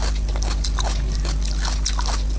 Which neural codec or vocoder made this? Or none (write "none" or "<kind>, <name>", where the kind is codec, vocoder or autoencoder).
none